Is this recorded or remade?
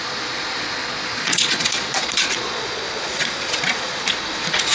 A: remade